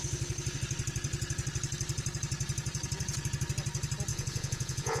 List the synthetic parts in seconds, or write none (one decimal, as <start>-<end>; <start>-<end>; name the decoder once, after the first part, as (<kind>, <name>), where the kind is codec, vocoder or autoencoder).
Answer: 4.1-5.0 (vocoder, Vocos)